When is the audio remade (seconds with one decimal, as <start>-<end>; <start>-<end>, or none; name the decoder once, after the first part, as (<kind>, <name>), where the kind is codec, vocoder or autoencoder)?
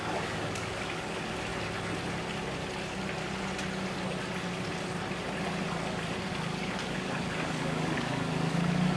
0.0-1.5 (codec, DAC); 6.3-9.0